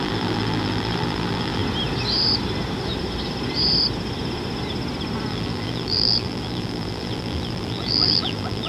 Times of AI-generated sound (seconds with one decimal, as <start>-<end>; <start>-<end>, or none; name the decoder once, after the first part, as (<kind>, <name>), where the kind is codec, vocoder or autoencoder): 0.0-1.6 (vocoder, BigVGAN v2); 5.3-8.7